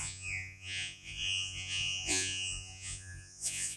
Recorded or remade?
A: remade